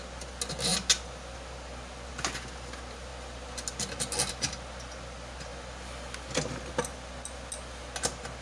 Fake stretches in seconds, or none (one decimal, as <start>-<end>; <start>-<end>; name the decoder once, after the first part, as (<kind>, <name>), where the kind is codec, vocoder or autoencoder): none